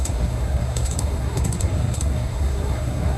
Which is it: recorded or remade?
remade